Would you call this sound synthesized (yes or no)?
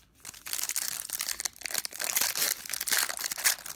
no